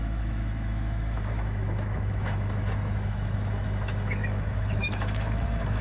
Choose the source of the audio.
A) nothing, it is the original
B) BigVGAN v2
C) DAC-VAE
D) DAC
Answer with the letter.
C